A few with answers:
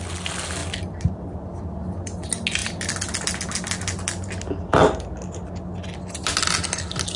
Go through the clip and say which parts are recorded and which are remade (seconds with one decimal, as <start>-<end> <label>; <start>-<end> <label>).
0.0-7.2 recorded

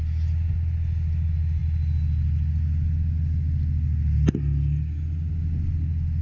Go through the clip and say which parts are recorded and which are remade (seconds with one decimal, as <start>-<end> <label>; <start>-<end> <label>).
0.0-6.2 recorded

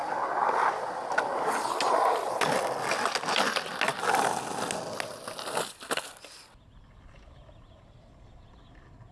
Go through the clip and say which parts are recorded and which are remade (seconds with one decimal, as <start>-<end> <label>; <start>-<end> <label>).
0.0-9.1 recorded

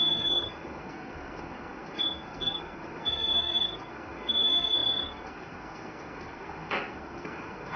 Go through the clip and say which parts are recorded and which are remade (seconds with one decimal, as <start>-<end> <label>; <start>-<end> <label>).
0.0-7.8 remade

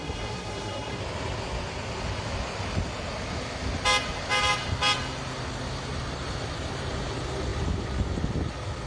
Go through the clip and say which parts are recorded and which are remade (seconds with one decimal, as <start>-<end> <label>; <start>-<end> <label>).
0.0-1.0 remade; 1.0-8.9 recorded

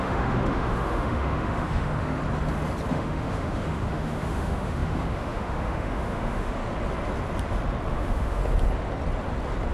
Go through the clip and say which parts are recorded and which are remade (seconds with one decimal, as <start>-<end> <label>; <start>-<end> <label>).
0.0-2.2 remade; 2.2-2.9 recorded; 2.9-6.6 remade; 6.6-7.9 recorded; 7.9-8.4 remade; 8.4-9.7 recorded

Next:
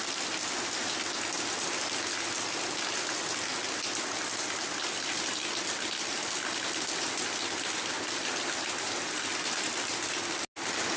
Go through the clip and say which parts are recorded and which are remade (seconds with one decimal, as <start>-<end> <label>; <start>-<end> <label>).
0.0-11.0 recorded